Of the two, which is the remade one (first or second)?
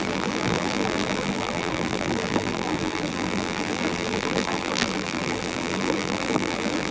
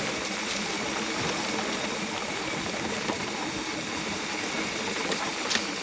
first